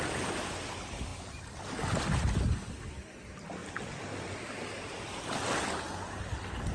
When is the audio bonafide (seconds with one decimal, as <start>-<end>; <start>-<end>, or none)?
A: 0.0-6.7

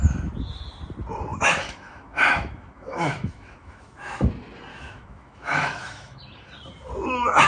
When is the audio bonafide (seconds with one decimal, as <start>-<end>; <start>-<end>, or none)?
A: 0.0-1.3; 4.3-4.7; 6.2-7.5

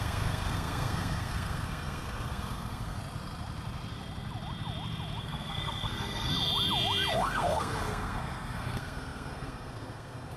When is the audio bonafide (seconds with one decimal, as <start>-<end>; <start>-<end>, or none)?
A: 3.0-5.2; 6.3-7.1

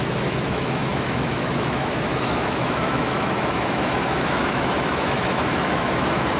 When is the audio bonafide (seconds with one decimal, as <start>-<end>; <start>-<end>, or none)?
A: none

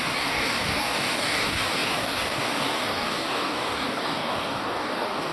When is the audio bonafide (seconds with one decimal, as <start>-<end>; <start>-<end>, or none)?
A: none